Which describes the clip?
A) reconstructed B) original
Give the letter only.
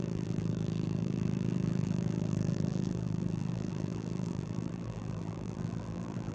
A